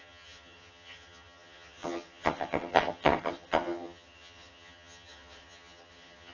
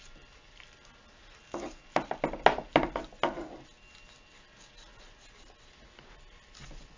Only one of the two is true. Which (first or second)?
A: second